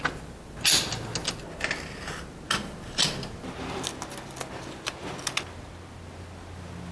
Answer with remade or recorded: recorded